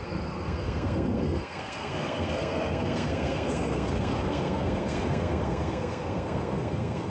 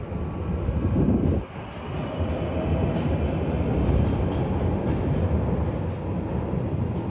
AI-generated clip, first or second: first